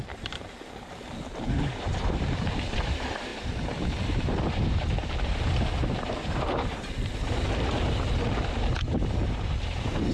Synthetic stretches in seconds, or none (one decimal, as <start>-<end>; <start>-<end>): 0.0-10.1